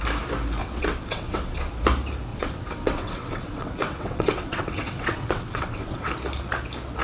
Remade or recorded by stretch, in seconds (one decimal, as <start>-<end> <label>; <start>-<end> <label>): 0.0-0.6 recorded; 0.6-1.7 remade; 1.7-2.3 recorded; 2.3-6.1 remade; 6.1-7.0 recorded